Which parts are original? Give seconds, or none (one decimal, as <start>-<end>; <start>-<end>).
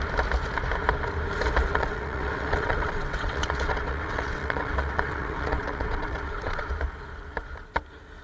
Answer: 0.0-1.7; 6.6-8.2